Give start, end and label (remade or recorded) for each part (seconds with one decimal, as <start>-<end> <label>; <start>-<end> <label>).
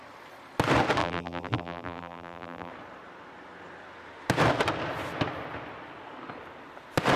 0.0-1.0 recorded; 1.0-2.7 remade; 2.7-7.2 recorded